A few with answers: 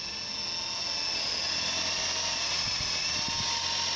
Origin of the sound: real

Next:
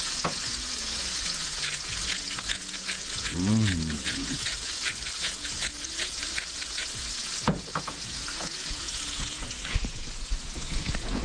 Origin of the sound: fake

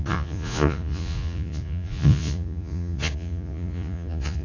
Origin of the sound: fake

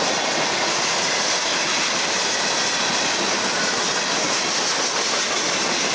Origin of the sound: real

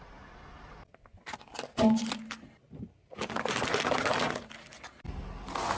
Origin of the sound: real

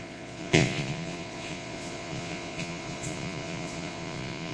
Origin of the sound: fake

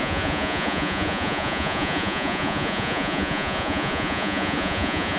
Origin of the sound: fake